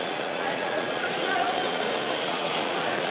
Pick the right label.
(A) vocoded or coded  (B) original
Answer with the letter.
A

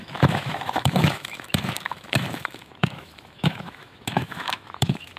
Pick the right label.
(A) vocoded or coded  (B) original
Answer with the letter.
A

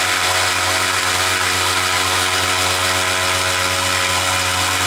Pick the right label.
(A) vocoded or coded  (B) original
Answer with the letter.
B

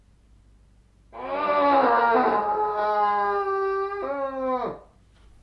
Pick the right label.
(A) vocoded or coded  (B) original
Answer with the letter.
B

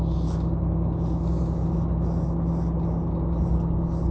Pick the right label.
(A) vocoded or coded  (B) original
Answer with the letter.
B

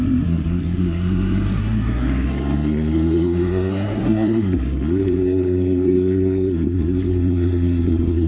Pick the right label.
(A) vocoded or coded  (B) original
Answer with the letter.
A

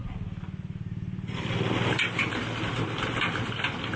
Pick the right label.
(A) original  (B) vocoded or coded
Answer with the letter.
A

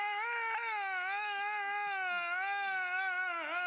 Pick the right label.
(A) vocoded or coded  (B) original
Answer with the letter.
B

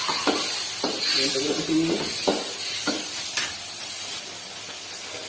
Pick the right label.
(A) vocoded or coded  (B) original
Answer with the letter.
B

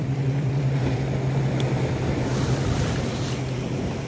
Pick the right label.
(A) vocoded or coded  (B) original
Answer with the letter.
A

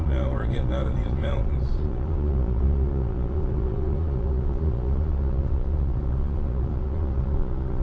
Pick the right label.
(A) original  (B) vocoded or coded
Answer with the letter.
B